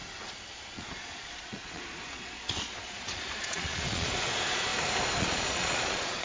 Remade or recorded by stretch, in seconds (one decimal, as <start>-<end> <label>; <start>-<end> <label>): 0.0-0.7 recorded; 0.7-4.7 remade; 4.7-5.2 recorded; 5.2-6.2 remade